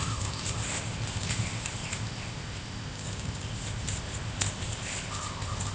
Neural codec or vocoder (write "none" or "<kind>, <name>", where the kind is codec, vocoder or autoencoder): codec, ZipCodec